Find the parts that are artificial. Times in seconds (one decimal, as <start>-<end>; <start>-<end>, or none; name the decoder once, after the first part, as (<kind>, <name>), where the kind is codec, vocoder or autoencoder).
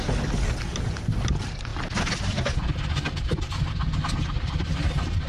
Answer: none